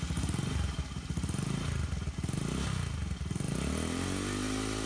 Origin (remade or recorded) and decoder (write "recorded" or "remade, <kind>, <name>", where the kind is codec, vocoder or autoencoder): recorded